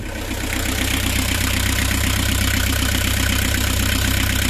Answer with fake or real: fake